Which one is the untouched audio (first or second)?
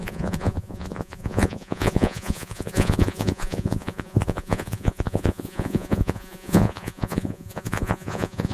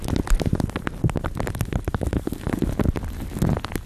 second